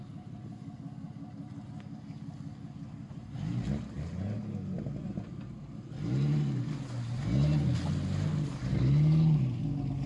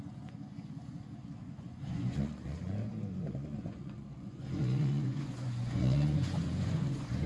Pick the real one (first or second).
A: first